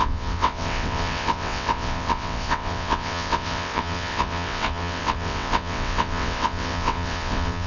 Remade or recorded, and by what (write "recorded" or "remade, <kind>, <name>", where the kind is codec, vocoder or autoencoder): remade, vocoder, WaveNeXt